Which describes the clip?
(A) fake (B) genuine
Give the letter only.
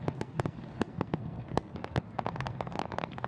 A